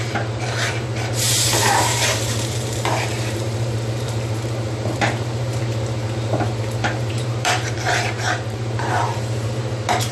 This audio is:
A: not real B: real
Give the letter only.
A